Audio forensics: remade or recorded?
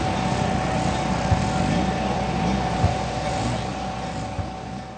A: recorded